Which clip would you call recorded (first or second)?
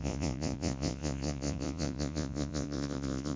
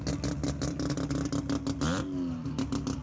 second